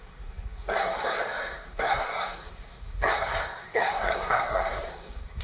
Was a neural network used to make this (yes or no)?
yes